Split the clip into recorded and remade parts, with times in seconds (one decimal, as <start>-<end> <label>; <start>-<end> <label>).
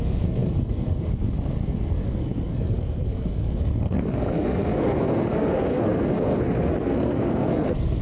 0.0-8.0 remade